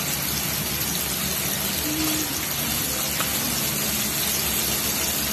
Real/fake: real